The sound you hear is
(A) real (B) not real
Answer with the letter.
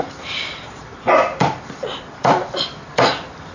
B